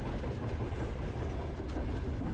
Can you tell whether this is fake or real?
real